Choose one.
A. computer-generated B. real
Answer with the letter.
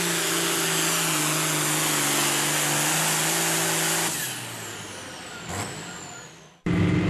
B